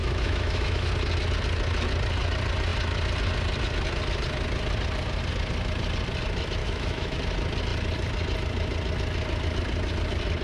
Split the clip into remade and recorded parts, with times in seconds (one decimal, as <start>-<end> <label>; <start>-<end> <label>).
0.0-0.9 remade; 0.9-6.6 recorded; 6.6-7.2 remade; 7.2-10.4 recorded